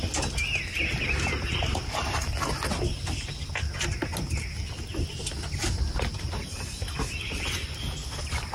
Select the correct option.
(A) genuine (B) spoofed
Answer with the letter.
A